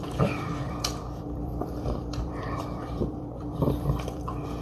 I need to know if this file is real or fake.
fake